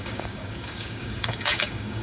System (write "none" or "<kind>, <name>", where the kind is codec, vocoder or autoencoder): codec, DAC